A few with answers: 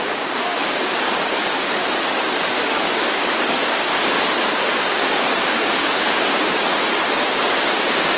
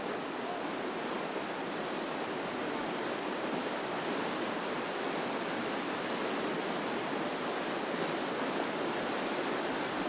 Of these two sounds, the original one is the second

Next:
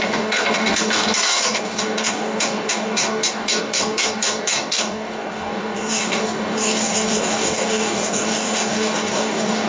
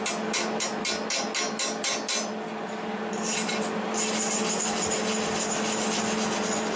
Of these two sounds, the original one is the second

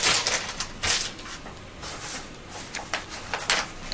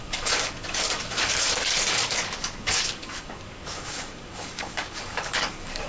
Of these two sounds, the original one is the first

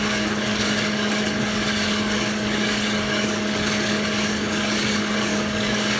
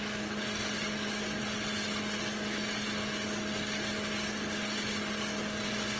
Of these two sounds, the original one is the second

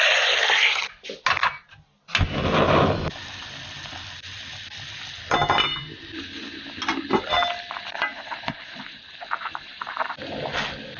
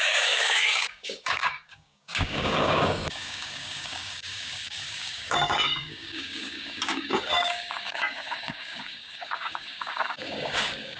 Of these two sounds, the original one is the first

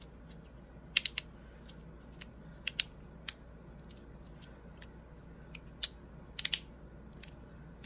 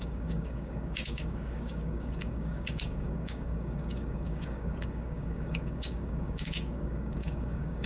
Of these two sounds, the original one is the first